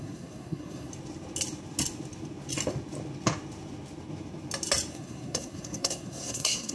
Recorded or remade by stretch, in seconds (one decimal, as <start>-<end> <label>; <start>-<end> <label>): 0.0-0.9 remade; 0.9-4.9 recorded; 4.9-6.7 remade